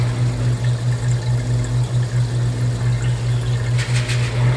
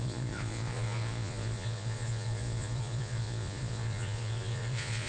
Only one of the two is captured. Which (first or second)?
first